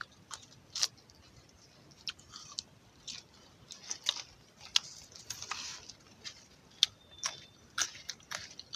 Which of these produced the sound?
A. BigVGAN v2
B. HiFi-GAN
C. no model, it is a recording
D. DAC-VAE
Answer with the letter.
C